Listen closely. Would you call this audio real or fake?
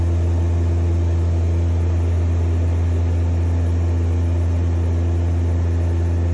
real